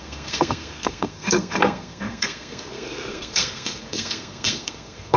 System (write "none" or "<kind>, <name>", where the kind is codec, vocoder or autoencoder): codec, SNAC